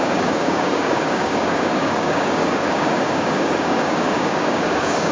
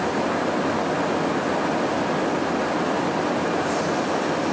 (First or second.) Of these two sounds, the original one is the second